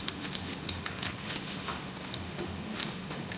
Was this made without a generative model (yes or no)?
no